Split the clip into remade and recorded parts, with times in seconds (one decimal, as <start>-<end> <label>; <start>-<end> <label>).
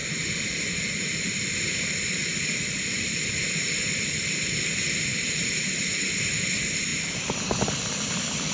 0.0-1.6 recorded; 1.6-6.9 remade; 6.9-7.6 recorded; 7.6-8.5 remade